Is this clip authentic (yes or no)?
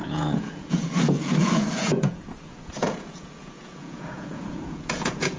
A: no